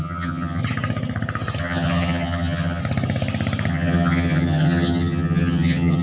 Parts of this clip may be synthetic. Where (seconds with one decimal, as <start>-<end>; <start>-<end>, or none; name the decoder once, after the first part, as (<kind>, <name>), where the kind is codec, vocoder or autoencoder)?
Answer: 0.0-0.6 (vocoder, HiFi-GAN); 1.6-2.8; 3.7-6.0